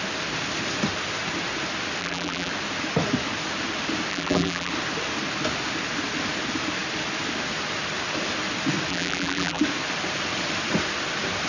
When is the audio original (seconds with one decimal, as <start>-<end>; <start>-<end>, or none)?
0.0-2.0; 2.5-4.1; 4.7-8.9; 9.6-11.5